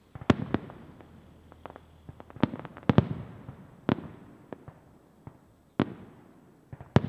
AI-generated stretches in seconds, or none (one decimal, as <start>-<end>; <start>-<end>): none